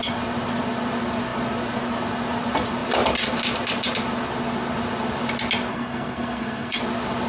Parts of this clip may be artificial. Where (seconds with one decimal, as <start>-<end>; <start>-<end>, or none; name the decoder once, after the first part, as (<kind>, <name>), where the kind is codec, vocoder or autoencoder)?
5.7-6.8 (codec, SNAC)